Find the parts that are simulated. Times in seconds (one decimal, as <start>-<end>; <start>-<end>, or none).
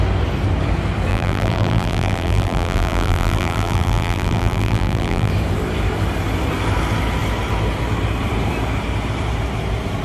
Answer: 1.1-5.3